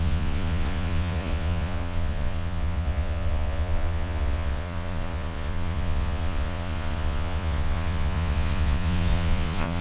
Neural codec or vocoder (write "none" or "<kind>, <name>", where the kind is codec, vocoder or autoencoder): vocoder, Vocos